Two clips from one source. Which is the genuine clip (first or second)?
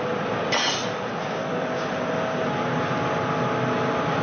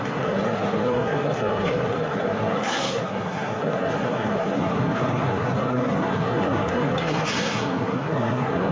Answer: first